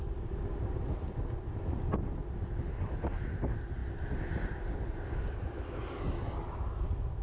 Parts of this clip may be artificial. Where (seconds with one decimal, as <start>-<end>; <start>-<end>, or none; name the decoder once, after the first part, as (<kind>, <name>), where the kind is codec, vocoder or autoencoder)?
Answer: none